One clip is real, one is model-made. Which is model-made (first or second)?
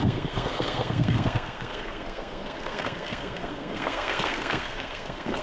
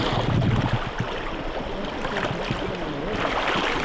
first